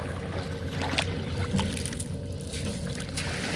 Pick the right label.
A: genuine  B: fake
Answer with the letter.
A